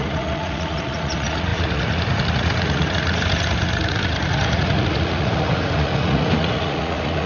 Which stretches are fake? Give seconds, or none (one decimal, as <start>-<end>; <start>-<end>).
0.0-7.3